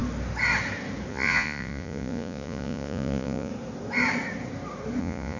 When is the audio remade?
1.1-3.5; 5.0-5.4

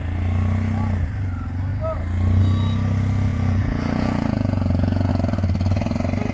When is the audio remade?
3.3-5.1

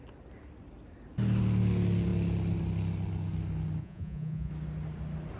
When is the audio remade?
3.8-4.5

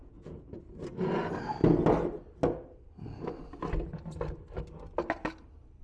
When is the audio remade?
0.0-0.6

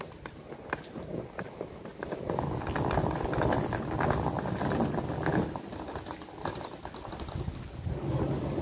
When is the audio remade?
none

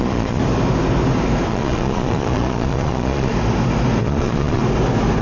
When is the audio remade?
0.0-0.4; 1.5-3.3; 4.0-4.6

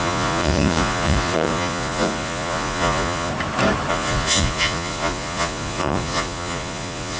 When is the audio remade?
0.0-3.3; 3.9-7.2

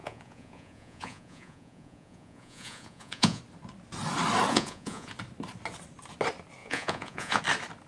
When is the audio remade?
0.0-3.4; 4.5-5.1; 6.6-7.4